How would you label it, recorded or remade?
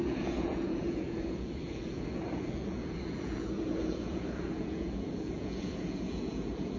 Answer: remade